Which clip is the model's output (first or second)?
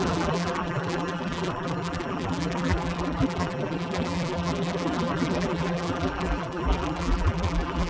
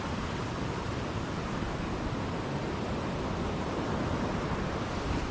first